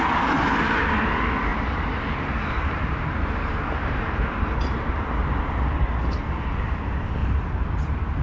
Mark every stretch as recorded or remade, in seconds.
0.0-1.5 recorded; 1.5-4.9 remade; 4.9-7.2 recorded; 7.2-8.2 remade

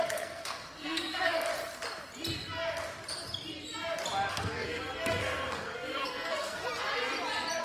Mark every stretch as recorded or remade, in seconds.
0.0-1.5 remade; 1.5-4.3 recorded; 4.3-6.6 remade; 6.6-7.6 recorded

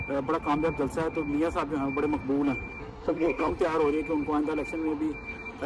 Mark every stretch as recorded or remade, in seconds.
0.0-2.8 recorded; 2.8-3.5 remade; 3.5-5.7 recorded

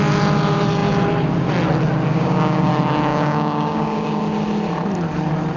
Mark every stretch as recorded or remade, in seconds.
0.0-2.1 recorded; 2.1-2.7 remade; 2.7-3.1 recorded; 3.1-4.2 remade; 4.2-5.6 recorded

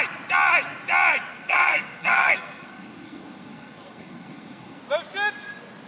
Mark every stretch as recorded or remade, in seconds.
0.0-1.3 recorded; 1.3-4.8 remade; 4.8-5.9 recorded

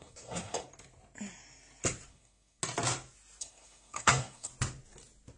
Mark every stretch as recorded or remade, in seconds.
0.0-0.7 remade; 0.7-2.1 recorded; 2.1-2.6 remade; 2.6-3.4 recorded; 3.4-4.5 remade; 4.5-5.4 recorded

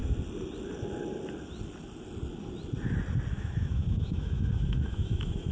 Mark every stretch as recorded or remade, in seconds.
0.0-3.3 recorded; 3.3-5.5 remade

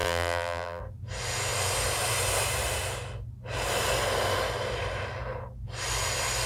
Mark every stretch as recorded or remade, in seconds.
0.0-0.8 remade; 0.8-6.5 recorded